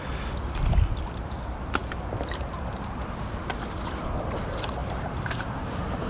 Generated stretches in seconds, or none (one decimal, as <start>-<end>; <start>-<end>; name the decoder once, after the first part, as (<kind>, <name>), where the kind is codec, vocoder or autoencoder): 1.8-3.0 (vocoder, BigVGAN v2); 4.8-5.4